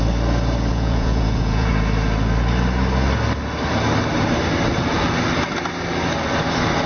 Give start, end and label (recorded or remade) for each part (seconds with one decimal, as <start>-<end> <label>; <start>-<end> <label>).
0.0-0.7 recorded; 0.7-1.7 remade; 1.7-6.9 recorded